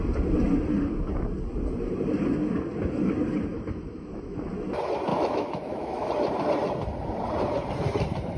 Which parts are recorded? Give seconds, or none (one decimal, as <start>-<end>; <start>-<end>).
0.0-3.5; 4.5-5.1; 6.1-8.4